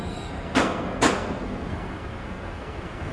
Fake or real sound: fake